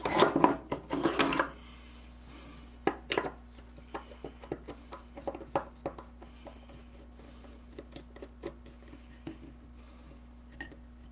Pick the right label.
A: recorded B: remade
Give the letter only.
A